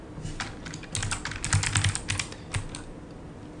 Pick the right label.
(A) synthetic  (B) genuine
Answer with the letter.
B